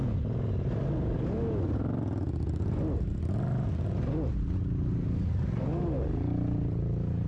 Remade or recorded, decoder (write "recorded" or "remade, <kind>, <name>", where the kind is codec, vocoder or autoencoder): recorded